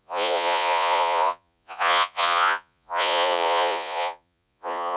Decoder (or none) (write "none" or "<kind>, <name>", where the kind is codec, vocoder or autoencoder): vocoder, Vocos